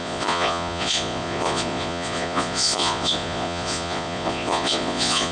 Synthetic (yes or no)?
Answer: yes